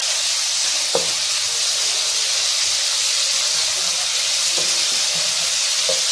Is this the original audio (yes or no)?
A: yes